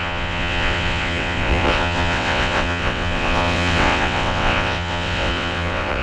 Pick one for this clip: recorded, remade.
remade